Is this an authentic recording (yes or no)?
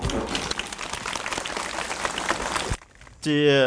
yes